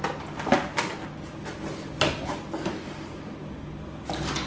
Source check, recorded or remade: recorded